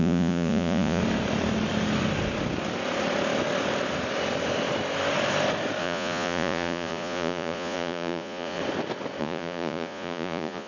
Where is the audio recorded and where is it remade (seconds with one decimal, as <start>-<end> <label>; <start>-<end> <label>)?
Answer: 0.0-1.0 remade; 1.0-5.8 recorded; 5.8-8.6 remade; 8.6-9.2 recorded; 9.2-10.7 remade